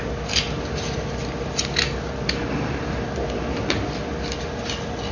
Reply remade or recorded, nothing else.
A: recorded